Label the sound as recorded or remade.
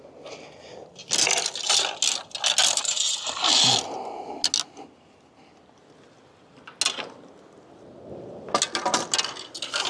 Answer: recorded